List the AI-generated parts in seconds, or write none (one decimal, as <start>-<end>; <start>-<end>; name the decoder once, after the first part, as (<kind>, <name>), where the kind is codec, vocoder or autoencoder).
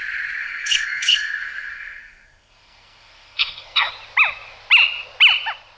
0.4-3.9 (codec, SNAC)